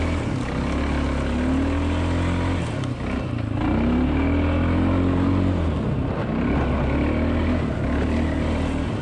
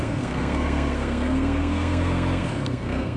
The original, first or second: first